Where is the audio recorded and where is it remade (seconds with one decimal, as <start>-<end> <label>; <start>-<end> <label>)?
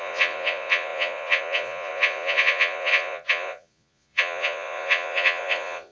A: 0.0-5.9 remade